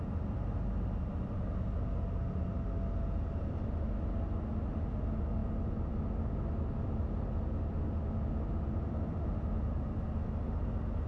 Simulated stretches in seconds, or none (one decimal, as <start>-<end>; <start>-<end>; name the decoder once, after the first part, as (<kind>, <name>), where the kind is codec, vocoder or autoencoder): none